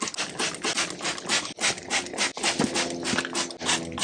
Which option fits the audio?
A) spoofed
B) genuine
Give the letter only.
B